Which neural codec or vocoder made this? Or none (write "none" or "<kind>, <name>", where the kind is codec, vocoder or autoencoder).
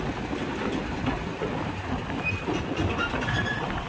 none